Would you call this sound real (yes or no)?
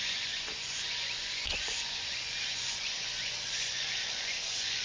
no